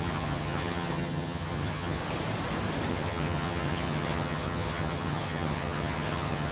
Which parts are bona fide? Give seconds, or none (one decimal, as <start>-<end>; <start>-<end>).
2.0-2.9